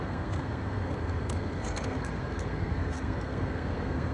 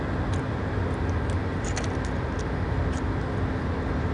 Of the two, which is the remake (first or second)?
first